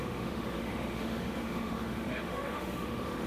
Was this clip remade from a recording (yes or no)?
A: yes